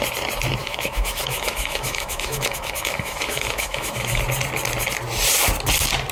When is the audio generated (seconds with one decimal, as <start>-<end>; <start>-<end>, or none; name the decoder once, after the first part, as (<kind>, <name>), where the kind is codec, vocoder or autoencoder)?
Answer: 0.6-4.2 (autoencoder, DAC-VAE)